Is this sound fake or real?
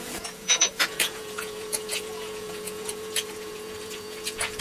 fake